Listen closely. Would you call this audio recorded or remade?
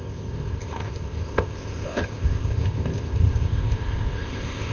remade